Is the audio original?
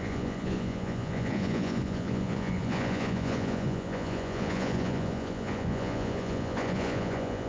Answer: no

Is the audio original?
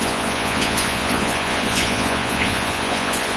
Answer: no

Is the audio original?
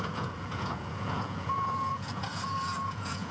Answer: no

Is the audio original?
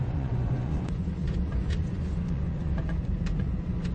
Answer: no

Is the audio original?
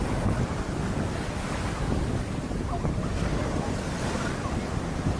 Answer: yes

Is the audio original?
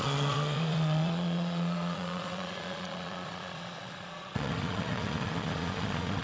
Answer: no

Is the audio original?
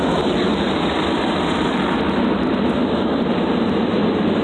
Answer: yes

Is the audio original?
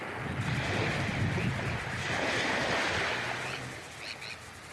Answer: yes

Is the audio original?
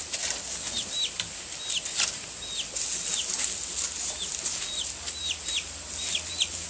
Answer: yes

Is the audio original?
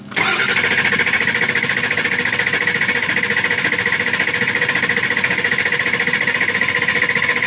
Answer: yes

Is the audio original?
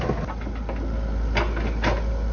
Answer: yes